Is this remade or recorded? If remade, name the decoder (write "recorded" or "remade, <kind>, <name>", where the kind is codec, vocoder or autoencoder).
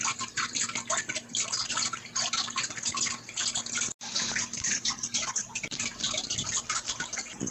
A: recorded